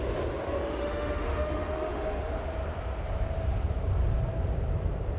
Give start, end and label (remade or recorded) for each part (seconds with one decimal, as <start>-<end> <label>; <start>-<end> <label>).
0.0-0.6 recorded; 0.6-2.3 remade; 2.3-5.2 recorded